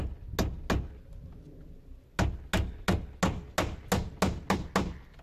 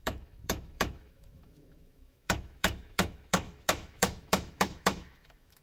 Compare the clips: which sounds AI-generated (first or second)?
second